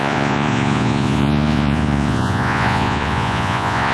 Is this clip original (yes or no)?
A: no